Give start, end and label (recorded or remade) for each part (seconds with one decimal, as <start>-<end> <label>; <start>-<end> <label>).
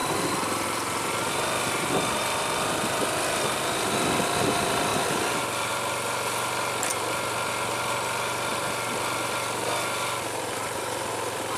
0.0-2.2 remade; 2.2-4.9 recorded; 4.9-5.7 remade; 5.7-6.9 recorded; 6.9-7.5 remade; 7.5-11.6 recorded